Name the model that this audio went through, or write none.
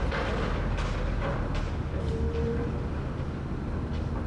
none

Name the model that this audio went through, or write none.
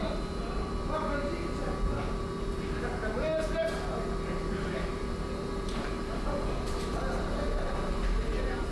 none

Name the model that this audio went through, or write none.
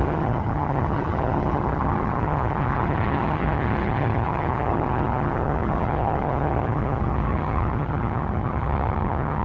vocoder, HiFi-GAN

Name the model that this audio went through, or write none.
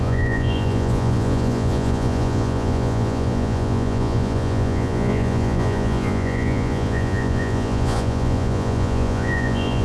vocoder, Vocos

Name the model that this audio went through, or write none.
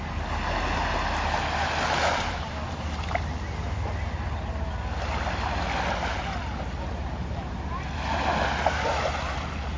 none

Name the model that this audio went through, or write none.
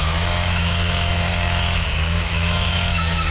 autoencoder, DAC-VAE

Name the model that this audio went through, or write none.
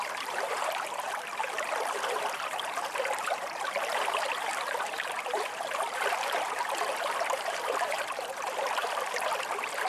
vocoder, BigVGAN v2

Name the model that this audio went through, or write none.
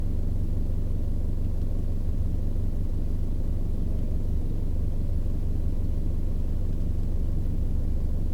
none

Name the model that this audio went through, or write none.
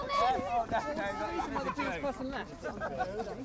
none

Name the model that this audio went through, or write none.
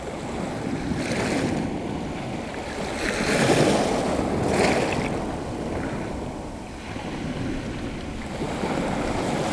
none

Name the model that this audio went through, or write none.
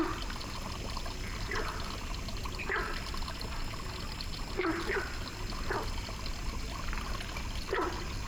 none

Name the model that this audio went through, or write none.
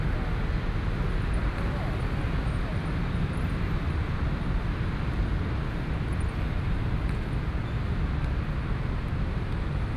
none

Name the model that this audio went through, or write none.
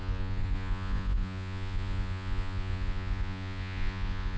vocoder, Vocos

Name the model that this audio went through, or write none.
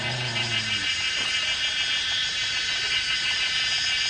none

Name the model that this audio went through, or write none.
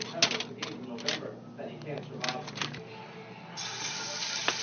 none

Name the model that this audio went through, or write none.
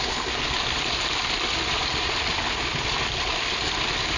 none